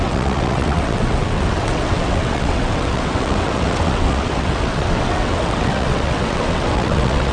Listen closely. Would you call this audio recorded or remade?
remade